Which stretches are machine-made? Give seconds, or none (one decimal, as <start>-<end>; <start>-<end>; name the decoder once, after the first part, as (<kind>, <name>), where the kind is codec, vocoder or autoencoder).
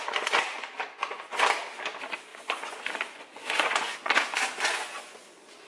0.0-1.4 (vocoder, Vocos); 2.3-5.7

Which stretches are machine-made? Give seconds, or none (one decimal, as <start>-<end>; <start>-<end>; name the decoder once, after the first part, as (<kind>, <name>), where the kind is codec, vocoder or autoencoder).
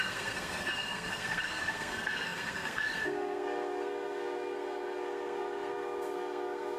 0.0-6.8 (codec, SNAC)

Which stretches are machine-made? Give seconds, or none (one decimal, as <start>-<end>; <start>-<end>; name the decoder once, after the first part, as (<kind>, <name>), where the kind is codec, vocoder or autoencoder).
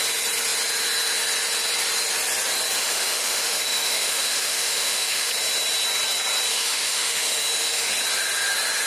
2.8-5.3 (autoencoder, DAC-VAE); 6.5-7.9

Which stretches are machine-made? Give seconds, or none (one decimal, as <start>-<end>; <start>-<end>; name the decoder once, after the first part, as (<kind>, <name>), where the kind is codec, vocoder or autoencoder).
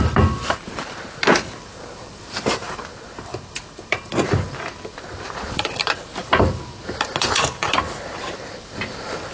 0.0-9.3 (vocoder, BigVGAN v2)